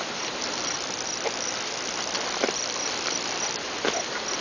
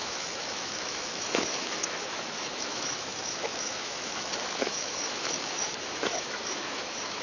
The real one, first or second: first